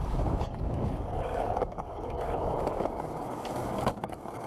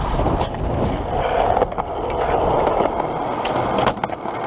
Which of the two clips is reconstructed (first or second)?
first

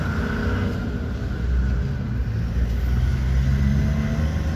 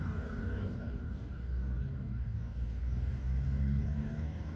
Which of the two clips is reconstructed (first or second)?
second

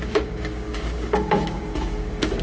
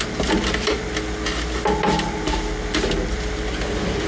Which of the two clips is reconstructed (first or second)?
first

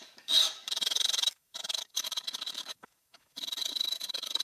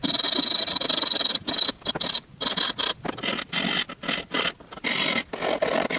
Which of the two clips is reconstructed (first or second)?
first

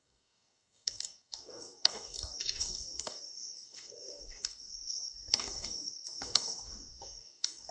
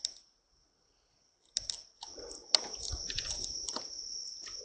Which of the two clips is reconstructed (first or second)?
first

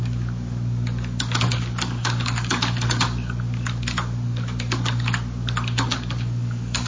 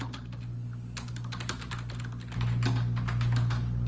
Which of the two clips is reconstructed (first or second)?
first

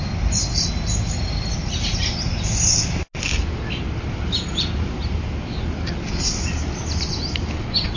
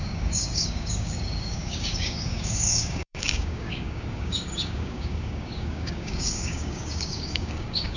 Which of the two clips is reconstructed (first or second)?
second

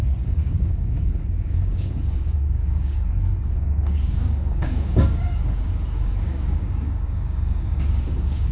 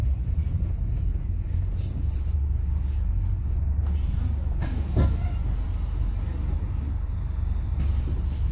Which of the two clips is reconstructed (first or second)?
first